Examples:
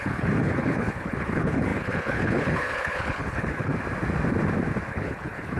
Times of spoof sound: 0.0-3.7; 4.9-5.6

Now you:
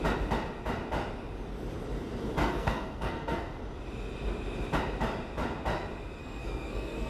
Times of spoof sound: 2.4-3.6; 6.2-7.1

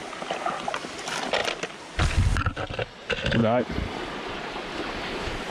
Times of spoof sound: 1.4-2.0; 3.4-4.4